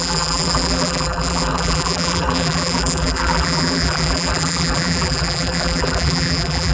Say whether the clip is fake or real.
fake